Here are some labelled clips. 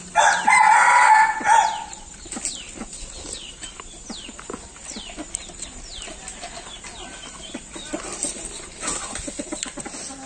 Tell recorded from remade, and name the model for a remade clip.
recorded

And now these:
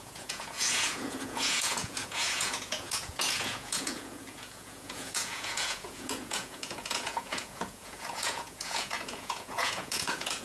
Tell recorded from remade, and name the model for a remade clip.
remade, vocoder, Vocos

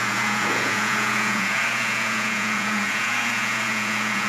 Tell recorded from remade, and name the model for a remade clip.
remade, vocoder, Vocos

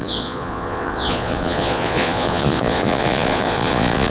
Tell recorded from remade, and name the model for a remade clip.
remade, vocoder, Vocos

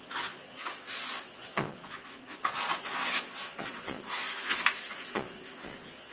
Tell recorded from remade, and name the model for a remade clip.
remade, vocoder, Vocos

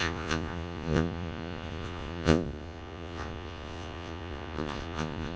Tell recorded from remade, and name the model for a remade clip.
remade, vocoder, Vocos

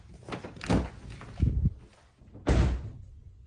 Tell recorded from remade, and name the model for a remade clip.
recorded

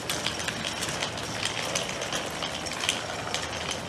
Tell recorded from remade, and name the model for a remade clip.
recorded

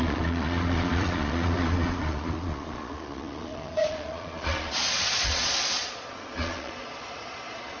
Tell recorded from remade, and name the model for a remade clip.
remade, vocoder, Vocos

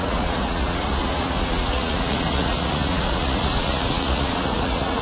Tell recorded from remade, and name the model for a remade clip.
remade, vocoder, Vocos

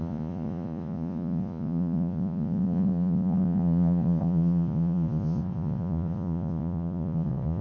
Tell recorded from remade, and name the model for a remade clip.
remade, vocoder, Vocos